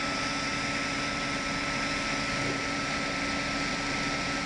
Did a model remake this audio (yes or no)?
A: no